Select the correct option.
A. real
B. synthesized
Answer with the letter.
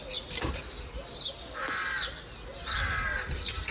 A